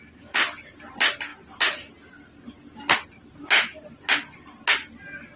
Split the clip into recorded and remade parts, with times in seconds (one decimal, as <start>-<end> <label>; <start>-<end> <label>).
0.0-5.4 recorded